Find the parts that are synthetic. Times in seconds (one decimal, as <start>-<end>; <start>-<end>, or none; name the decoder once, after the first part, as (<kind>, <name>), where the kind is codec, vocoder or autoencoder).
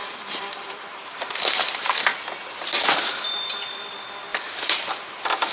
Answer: 0.0-0.9 (vocoder, BigVGAN v2); 4.3-4.9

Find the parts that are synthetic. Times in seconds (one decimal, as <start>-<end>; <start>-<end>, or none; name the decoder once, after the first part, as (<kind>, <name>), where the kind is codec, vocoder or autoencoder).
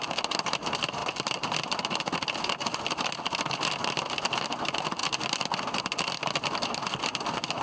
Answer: 1.0-3.8 (vocoder, BigVGAN v2)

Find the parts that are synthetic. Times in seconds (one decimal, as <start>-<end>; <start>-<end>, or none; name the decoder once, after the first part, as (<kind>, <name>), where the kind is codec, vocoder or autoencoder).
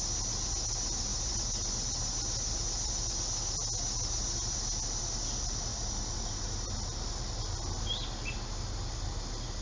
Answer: 5.7-6.7 (vocoder, BigVGAN v2)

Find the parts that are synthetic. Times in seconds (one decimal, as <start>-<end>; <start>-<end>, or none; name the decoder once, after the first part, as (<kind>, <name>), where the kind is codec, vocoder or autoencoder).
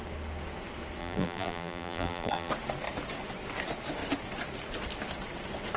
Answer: 1.0-2.5 (vocoder, BigVGAN v2)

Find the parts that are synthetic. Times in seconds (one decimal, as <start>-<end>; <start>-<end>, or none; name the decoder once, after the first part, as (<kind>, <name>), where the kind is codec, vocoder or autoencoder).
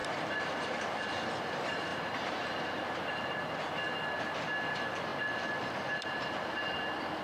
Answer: 0.0-0.6 (vocoder, BigVGAN v2); 1.9-2.7